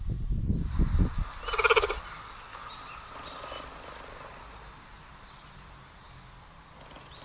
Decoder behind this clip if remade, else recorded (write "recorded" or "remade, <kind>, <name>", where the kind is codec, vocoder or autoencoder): recorded